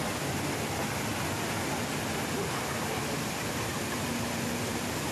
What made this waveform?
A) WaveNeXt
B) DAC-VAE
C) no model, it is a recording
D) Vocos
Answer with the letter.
C